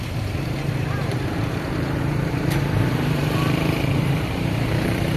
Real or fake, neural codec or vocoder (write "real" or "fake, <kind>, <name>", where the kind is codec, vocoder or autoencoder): fake, vocoder, BigVGAN v2